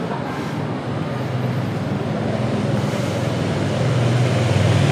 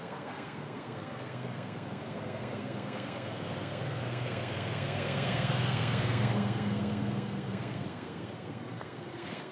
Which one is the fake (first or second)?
second